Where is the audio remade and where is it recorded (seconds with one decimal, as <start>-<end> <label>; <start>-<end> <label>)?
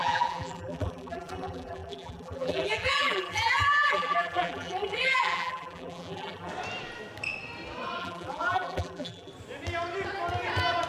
0.0-6.5 remade; 6.5-8.0 recorded; 8.0-9.3 remade; 9.3-10.9 recorded